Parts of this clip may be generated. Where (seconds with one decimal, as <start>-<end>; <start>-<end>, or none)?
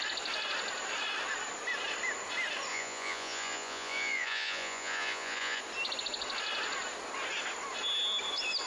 2.7-5.6